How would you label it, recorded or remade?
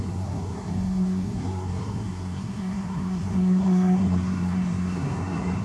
remade